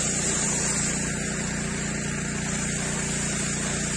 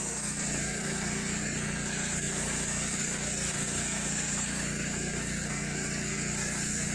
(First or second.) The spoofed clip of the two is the second